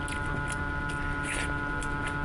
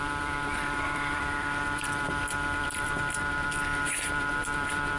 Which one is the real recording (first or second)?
first